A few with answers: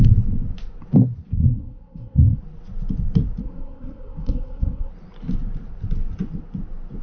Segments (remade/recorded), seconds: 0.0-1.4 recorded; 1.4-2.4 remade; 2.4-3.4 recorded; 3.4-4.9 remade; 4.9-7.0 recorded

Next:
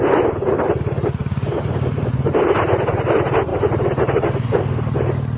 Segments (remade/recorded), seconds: 0.0-5.4 recorded

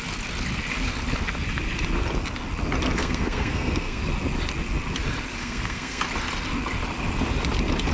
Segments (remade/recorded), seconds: 0.0-3.0 recorded; 3.0-4.0 remade; 4.0-5.4 recorded; 5.4-6.0 remade; 6.0-7.9 recorded

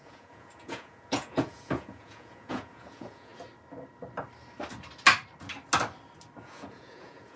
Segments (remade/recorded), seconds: 0.0-3.3 remade; 3.3-6.4 recorded; 6.4-7.4 remade